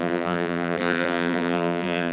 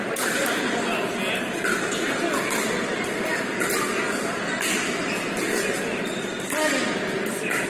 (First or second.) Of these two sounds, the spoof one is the first